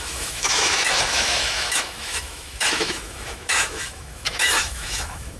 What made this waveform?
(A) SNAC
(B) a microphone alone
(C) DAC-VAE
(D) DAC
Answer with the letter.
C